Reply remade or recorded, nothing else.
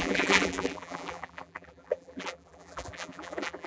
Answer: remade